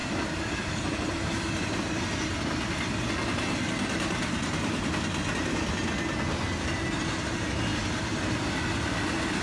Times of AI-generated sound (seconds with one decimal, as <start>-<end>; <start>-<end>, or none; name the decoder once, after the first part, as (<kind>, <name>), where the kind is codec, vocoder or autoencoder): none